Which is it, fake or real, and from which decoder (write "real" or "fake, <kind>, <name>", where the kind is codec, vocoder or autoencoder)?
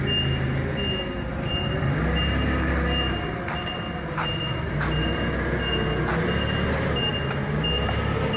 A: real